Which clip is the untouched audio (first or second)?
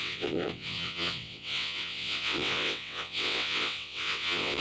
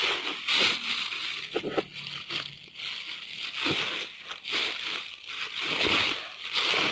second